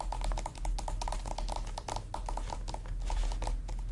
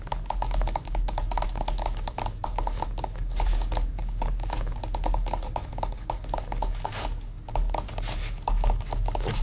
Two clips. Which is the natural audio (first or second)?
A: first